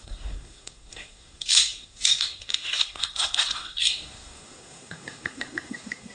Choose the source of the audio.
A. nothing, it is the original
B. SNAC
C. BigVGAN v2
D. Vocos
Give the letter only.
B